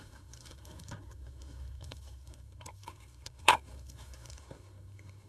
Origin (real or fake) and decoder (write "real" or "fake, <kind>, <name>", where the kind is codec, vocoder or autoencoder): fake, codec, SNAC